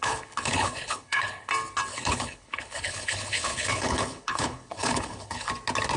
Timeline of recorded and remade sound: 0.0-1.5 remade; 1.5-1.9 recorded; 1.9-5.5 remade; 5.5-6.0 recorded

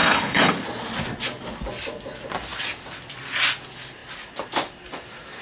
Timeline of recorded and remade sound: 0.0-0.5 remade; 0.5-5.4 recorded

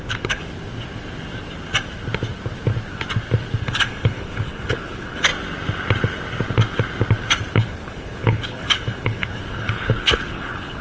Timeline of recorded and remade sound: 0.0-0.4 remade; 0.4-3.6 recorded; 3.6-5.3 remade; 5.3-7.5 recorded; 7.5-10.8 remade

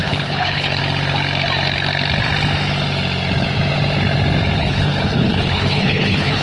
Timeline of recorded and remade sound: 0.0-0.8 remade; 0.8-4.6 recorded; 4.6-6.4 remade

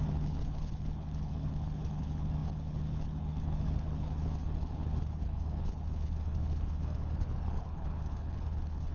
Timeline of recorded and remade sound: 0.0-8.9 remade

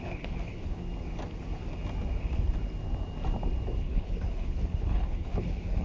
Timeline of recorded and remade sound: 0.0-0.8 remade; 0.8-3.8 recorded; 3.8-5.8 remade